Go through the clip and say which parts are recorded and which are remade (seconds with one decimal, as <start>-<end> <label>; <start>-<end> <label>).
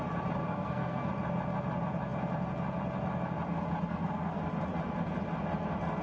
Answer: 0.0-0.4 recorded; 0.4-1.1 remade; 1.1-3.9 recorded; 3.9-4.4 remade; 4.4-6.0 recorded